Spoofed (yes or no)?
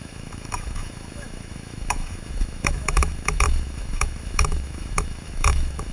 yes